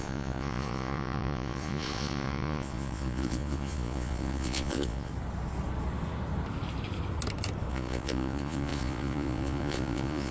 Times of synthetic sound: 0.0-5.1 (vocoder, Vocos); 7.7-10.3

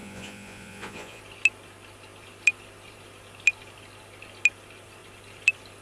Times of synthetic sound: 0.0-1.2 (vocoder, Vocos)

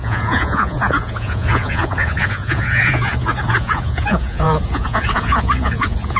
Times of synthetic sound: 0.0-6.2 (vocoder, Vocos)

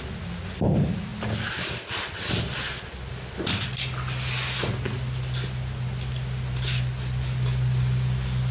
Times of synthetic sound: none

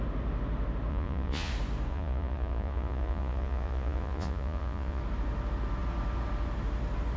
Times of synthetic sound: 0.9-1.5 (vocoder, Vocos); 1.9-5.0

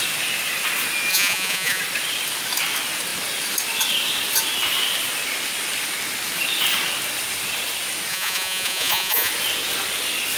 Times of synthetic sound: 1.1-1.8 (vocoder, Vocos); 8.1-9.3

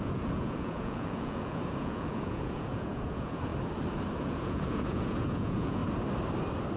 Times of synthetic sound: 0.0-3.5 (vocoder, Vocos); 4.2-5.8